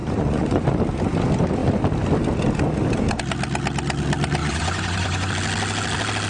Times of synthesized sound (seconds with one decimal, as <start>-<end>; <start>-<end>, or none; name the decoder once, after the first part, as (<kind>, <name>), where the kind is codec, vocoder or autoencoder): 0.0-0.6 (vocoder, Vocos); 4.4-5.3